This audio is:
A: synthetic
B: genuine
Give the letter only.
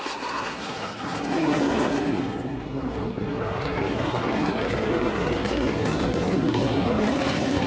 A